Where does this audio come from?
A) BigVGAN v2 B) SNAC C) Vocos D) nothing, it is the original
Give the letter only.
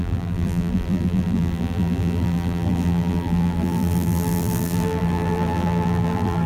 A